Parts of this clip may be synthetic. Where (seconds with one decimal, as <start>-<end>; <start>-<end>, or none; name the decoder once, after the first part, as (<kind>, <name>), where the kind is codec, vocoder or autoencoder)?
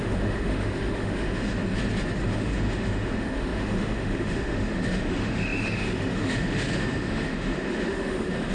0.0-1.6 (autoencoder, DAC-VAE); 2.2-8.5